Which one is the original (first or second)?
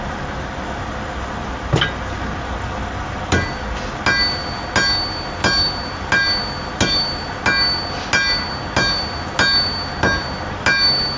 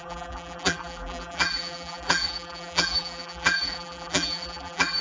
first